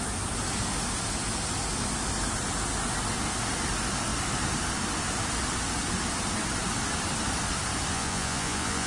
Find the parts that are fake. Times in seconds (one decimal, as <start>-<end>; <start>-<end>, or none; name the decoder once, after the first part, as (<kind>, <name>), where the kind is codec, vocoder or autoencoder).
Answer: 7.9-8.9 (vocoder, Vocos)